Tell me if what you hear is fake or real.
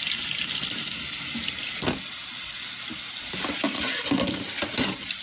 real